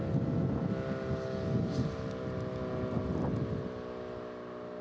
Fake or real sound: real